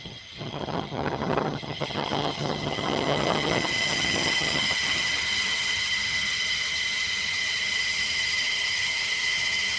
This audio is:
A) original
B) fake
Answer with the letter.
B